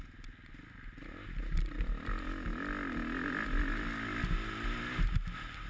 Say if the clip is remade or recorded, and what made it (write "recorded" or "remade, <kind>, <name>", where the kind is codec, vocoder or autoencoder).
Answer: recorded